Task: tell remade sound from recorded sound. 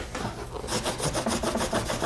recorded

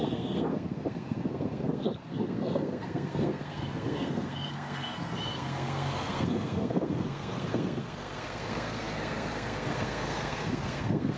remade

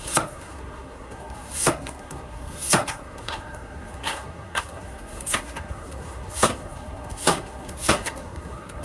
remade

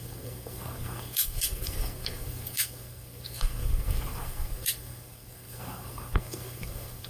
remade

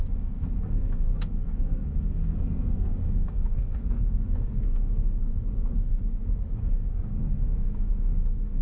remade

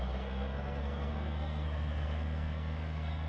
remade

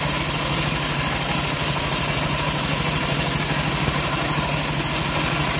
recorded